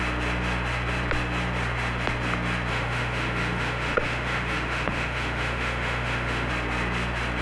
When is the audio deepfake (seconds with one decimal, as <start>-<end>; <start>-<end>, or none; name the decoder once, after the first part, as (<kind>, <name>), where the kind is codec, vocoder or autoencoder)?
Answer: 2.7-6.5 (autoencoder, DAC-VAE)